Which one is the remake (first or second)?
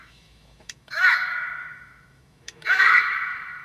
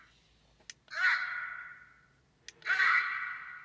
first